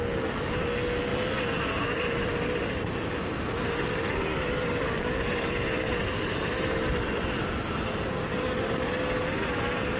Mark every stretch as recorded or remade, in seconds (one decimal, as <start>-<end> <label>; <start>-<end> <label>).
0.0-10.0 recorded